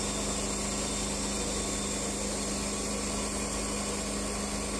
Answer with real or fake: real